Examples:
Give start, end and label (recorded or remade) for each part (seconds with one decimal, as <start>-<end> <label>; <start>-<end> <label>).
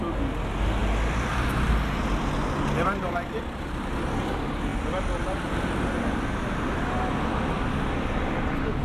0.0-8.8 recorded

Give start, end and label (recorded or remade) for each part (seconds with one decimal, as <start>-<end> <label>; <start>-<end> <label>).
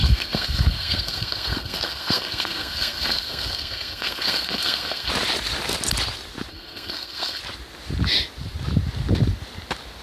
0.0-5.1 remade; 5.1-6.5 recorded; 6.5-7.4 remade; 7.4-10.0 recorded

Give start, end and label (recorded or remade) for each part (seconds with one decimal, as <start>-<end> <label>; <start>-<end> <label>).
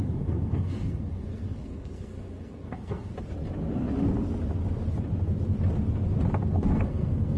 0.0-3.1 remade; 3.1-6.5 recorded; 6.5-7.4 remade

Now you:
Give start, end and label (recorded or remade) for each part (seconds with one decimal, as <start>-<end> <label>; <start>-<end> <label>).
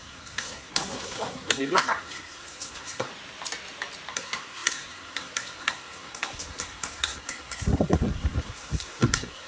0.0-3.1 remade; 3.1-4.1 recorded; 4.1-9.5 remade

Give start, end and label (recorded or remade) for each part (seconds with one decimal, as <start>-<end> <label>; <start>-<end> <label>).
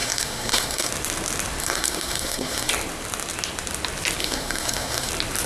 0.0-0.9 remade; 0.9-1.6 recorded; 1.6-2.7 remade; 2.7-4.2 recorded; 4.2-5.1 remade; 5.1-5.5 recorded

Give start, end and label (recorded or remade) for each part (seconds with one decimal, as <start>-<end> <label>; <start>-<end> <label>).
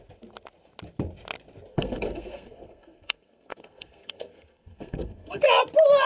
0.0-1.7 recorded; 1.7-5.4 remade; 5.4-6.1 recorded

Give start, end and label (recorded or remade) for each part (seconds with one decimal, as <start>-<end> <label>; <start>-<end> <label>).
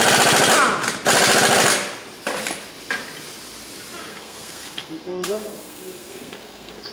0.0-4.1 recorded; 4.1-6.9 remade